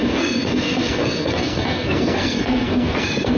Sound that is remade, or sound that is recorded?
remade